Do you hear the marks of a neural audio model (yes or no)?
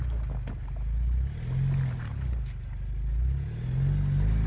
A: no